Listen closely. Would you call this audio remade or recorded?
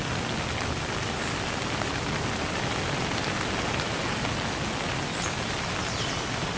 recorded